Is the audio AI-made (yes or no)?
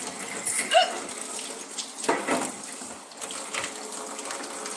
no